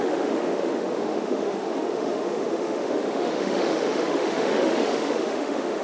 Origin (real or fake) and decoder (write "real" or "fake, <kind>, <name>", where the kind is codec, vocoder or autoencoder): fake, autoencoder, DAC-VAE